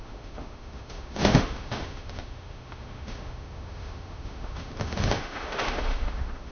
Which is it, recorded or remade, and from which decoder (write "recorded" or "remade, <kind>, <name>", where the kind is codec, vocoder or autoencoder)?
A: remade, autoencoder, DAC-VAE